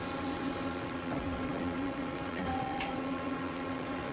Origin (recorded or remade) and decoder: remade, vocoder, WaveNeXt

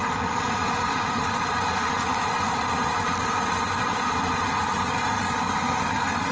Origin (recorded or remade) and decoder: recorded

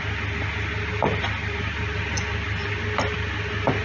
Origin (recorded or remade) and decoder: recorded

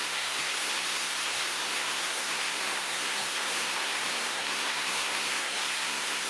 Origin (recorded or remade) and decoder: remade, codec, SNAC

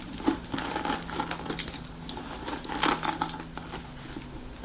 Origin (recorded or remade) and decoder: recorded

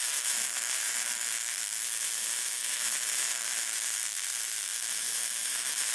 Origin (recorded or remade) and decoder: remade, autoencoder, DAC-VAE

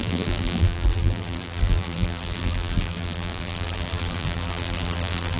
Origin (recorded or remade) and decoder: remade, vocoder, BigVGAN v2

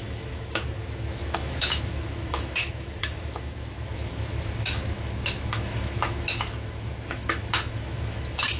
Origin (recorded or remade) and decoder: remade, autoencoder, DAC-VAE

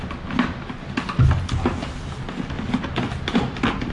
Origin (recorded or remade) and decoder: recorded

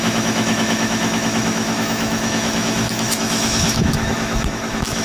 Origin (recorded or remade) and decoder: remade, autoencoder, DAC-VAE